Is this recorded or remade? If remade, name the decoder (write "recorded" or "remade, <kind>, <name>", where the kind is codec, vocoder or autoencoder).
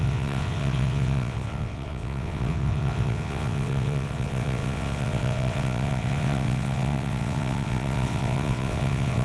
remade, vocoder, WaveNeXt